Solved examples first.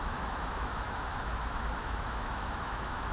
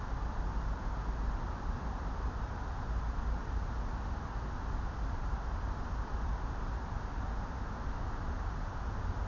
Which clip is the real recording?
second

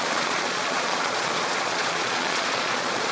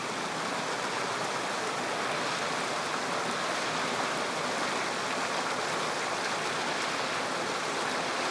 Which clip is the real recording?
second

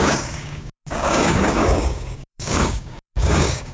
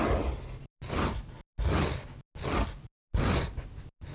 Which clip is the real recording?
second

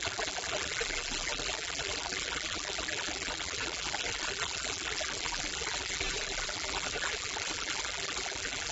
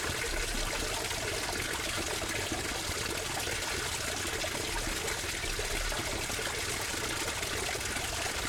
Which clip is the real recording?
second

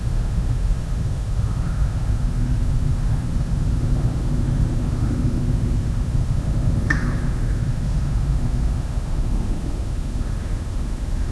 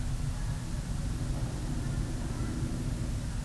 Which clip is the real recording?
second